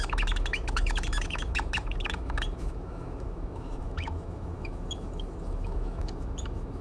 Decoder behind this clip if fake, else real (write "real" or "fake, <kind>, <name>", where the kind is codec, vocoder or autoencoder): fake, autoencoder, DAC-VAE